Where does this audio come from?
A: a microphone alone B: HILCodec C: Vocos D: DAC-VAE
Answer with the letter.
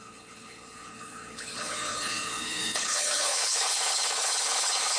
B